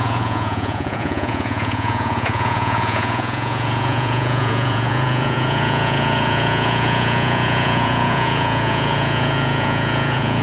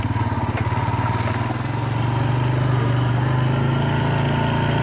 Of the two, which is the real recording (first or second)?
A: second